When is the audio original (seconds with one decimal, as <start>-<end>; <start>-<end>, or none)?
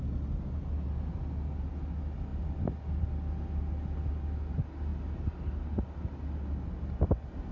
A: 0.0-7.5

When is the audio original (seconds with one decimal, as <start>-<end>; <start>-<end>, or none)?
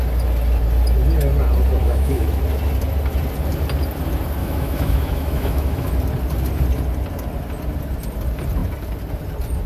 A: 0.0-1.8; 2.4-4.4; 5.9-9.7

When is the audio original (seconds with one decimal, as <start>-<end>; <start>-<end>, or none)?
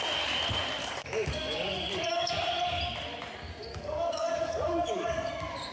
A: 0.0-0.8; 2.3-3.7; 5.3-5.7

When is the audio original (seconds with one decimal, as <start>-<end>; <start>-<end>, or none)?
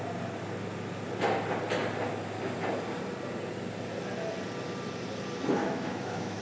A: 0.0-5.6